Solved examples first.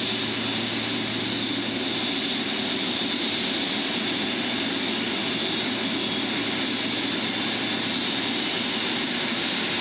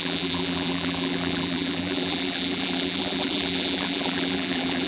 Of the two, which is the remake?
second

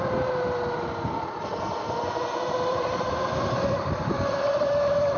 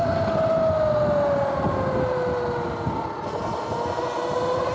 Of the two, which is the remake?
first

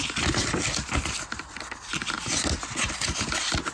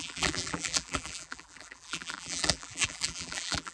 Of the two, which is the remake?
second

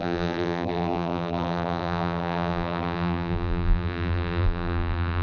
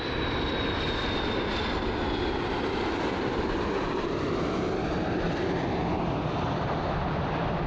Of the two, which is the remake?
first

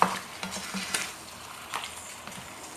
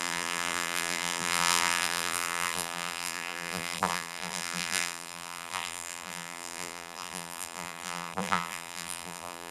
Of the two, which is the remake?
second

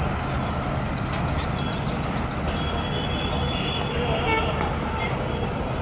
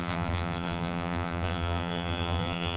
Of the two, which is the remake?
second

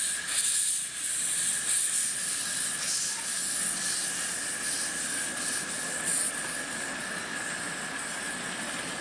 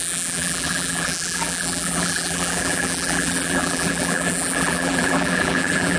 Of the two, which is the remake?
second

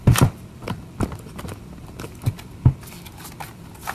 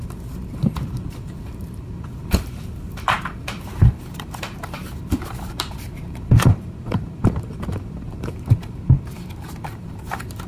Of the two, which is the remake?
second